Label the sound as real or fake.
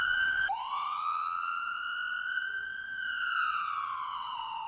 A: fake